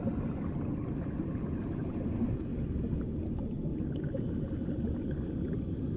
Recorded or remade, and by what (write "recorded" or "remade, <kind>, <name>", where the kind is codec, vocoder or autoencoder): recorded